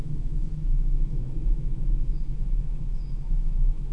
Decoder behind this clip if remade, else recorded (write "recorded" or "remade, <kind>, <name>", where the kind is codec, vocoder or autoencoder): remade, autoencoder, DAC-VAE